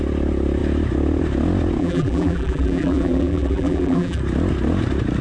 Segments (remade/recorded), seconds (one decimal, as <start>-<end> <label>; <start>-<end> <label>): 0.0-1.8 recorded; 1.8-4.2 remade; 4.2-5.2 recorded